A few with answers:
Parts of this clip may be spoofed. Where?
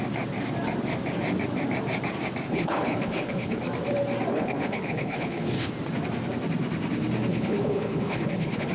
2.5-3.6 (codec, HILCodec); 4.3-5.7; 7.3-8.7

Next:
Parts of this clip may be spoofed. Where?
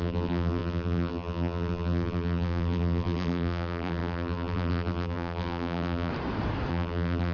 0.0-6.1 (vocoder, BigVGAN v2); 6.7-7.3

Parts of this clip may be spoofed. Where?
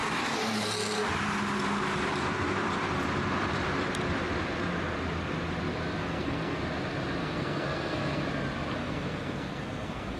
6.0-6.6 (codec, SNAC); 7.2-8.2; 8.8-10.2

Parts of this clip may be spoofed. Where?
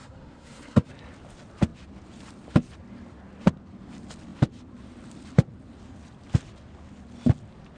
0.0-0.9 (codec, SNAC)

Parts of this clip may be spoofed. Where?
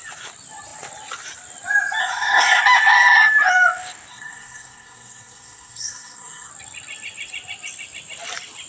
2.0-2.6 (codec, SNAC); 4.1-6.5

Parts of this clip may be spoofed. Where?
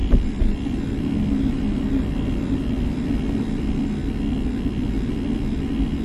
0.0-3.6 (vocoder, BigVGAN v2); 4.0-4.5